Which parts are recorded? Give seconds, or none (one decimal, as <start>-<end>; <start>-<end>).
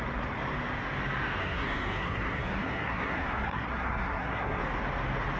0.0-1.4; 4.6-5.4